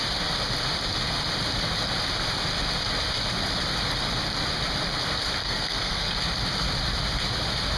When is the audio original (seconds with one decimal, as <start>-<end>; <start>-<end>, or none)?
0.0-5.4; 6.1-7.8